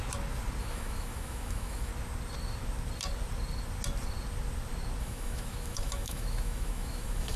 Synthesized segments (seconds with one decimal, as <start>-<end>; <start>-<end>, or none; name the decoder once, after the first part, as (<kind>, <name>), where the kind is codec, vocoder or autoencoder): 0.6-1.9 (autoencoder, DAC-VAE); 5.0-7.4